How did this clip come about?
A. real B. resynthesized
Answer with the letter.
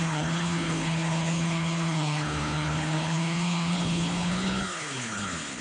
B